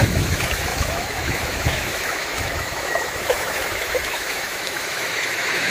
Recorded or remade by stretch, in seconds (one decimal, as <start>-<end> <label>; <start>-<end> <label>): 0.0-5.7 remade